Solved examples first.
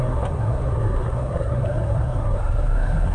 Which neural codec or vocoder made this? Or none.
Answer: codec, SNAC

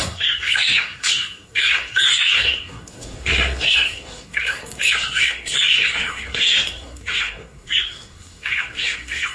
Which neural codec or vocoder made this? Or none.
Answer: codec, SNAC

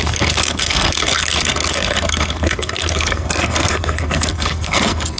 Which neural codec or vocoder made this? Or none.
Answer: codec, SNAC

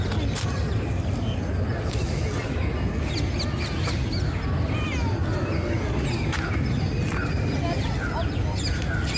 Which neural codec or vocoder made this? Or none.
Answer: none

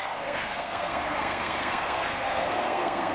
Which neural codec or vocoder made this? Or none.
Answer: codec, SNAC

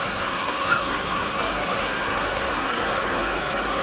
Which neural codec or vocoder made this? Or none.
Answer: codec, SNAC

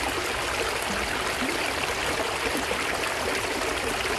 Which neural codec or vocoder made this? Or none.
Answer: none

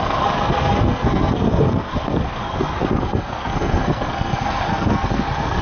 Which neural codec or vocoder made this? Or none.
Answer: codec, SNAC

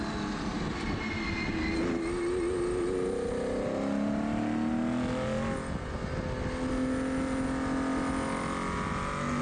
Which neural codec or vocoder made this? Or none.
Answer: none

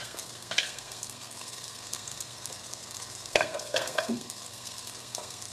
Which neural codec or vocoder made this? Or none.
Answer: codec, SNAC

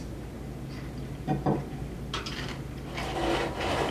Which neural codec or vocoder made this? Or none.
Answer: none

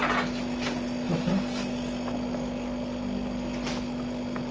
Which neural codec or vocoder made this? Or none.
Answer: none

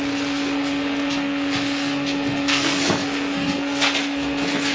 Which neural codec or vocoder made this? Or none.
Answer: codec, SNAC